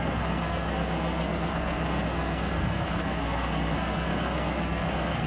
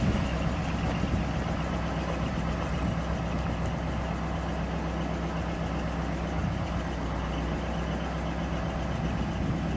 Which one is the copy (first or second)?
first